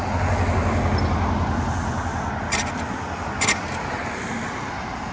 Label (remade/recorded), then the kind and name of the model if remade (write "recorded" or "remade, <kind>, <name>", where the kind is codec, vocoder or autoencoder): recorded